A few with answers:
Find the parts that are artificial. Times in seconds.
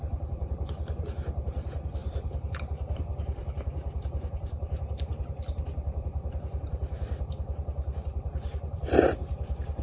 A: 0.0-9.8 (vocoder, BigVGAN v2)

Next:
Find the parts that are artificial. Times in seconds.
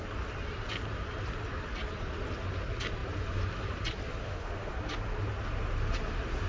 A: 4.2-4.7 (autoencoder, DAC-VAE)